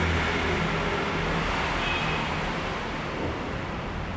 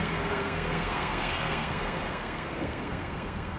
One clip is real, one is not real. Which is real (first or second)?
first